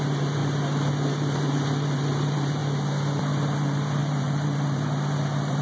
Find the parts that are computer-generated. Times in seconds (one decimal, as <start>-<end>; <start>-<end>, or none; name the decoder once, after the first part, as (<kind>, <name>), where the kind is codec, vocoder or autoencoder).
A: 0.0-0.4 (vocoder, BigVGAN v2); 0.9-2.6; 3.2-5.6